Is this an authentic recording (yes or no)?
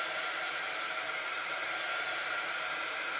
no